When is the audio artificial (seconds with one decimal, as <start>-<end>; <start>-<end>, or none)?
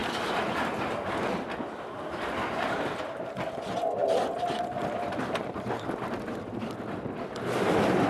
none